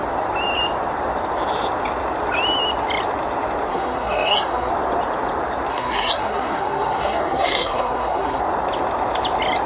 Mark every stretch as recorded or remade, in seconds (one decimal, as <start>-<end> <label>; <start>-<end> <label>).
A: 0.0-3.7 recorded; 3.7-4.7 remade; 4.7-5.7 recorded; 5.7-8.4 remade; 8.4-9.7 recorded